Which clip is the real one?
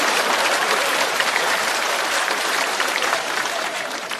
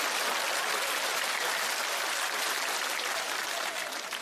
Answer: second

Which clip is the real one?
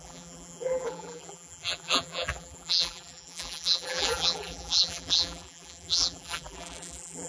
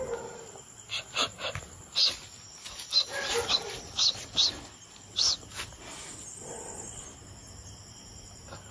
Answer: second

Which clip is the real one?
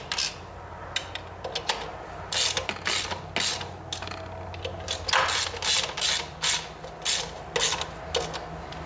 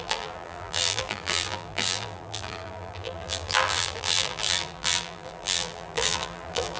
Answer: first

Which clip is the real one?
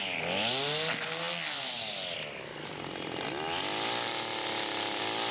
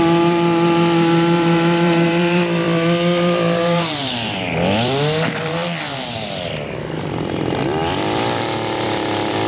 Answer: first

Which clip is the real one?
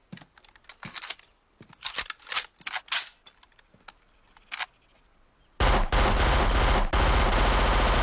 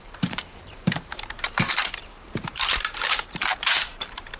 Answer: first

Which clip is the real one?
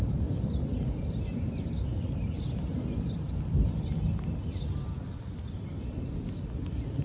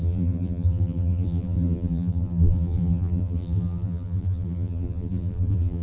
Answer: first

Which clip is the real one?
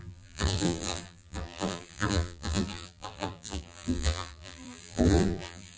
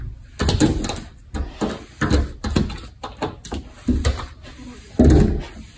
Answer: second